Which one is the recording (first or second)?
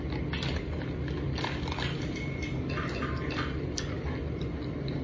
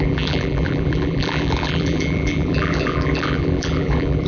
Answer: first